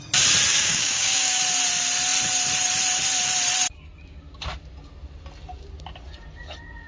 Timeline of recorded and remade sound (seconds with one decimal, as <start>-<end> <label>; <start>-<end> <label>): 0.0-0.5 recorded; 0.5-1.4 remade; 1.4-6.9 recorded

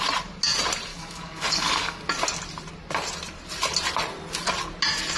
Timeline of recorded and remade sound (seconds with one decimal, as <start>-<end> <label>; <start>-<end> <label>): 0.0-0.9 recorded; 0.9-2.0 remade; 2.0-5.2 recorded